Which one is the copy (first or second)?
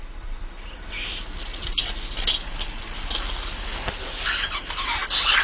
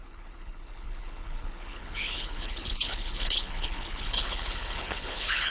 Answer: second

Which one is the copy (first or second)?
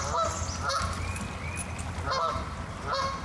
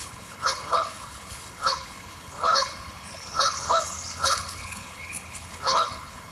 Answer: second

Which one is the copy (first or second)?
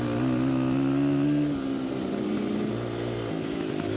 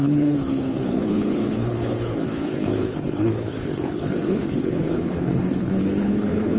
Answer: second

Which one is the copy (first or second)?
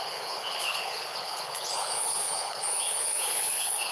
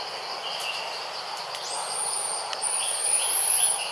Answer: first